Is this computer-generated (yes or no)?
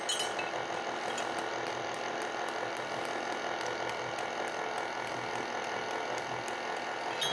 no